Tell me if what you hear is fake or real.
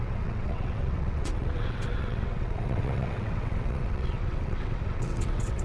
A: fake